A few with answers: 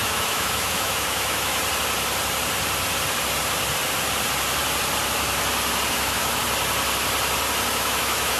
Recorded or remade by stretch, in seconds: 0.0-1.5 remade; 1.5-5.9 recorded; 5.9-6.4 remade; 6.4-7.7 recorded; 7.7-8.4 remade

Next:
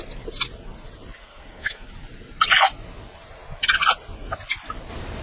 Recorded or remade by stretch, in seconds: 0.0-1.2 recorded; 1.2-1.9 remade; 1.9-5.2 recorded

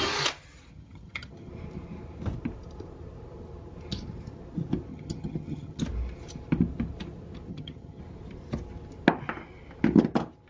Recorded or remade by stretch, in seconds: 0.0-0.7 recorded; 0.7-1.5 remade; 1.5-4.9 recorded; 4.9-5.8 remade; 5.8-7.5 recorded; 7.5-8.0 remade; 8.0-10.5 recorded